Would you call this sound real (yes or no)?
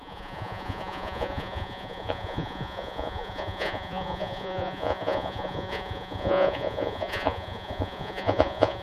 no